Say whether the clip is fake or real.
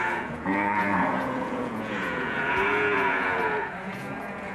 fake